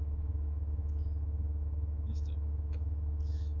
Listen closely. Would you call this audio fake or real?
fake